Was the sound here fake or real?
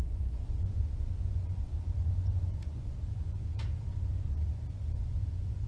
fake